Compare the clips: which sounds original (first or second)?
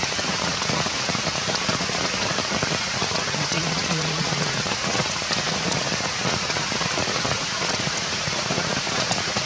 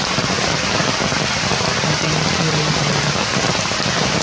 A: second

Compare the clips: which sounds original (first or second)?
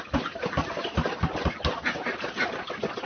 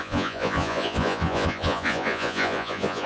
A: first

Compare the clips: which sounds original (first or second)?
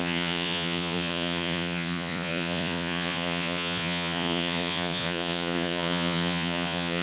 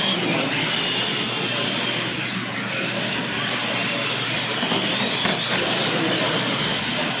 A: second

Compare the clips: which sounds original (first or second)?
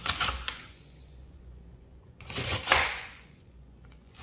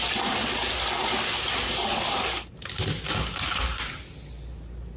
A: second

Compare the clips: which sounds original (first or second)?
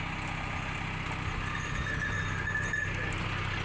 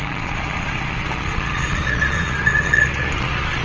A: first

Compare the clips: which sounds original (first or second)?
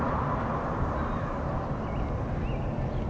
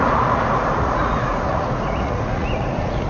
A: first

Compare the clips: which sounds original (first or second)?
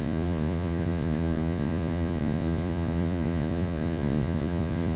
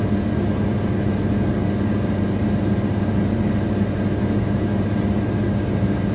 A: second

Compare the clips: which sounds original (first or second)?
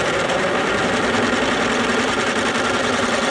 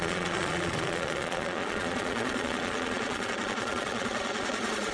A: first